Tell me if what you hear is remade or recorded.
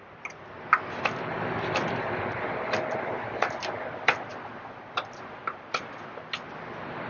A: recorded